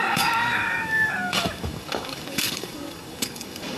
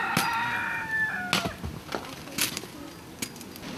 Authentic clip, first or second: second